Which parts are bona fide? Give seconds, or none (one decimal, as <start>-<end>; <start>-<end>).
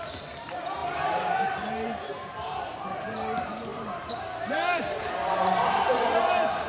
none